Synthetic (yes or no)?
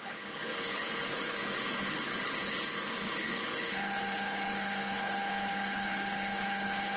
yes